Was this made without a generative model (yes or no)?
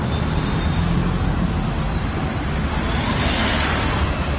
yes